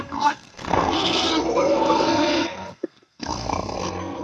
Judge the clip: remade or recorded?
remade